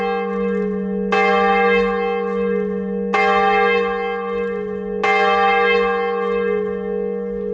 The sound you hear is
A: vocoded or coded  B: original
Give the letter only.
B